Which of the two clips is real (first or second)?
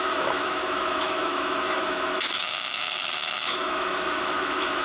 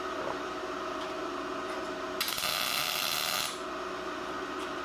second